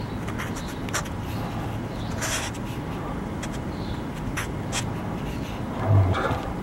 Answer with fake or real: real